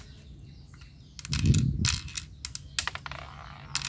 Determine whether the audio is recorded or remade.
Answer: recorded